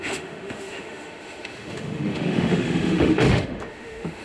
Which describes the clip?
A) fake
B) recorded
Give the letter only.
A